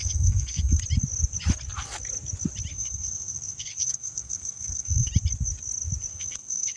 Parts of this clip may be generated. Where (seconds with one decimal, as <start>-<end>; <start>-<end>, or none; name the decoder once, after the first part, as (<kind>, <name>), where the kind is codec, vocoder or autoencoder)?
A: 0.0-0.8 (codec, SNAC); 2.7-5.1; 6.1-6.8